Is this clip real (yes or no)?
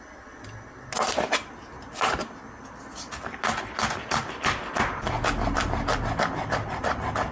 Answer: yes